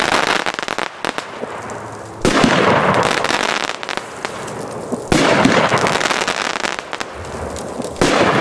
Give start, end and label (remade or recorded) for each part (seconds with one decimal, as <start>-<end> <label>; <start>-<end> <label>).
0.0-8.4 recorded

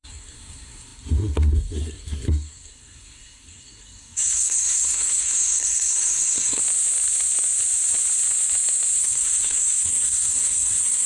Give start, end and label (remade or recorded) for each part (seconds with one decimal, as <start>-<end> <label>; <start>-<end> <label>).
0.0-6.6 remade; 6.6-9.0 recorded; 9.0-11.1 remade

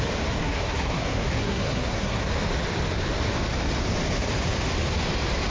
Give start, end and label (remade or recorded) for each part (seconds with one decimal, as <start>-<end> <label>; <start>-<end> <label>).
0.0-0.4 recorded; 0.4-2.2 remade; 2.2-5.5 recorded

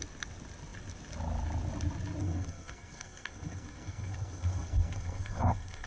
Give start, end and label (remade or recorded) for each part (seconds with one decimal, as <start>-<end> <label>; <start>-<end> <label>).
0.0-2.2 recorded; 2.2-5.9 remade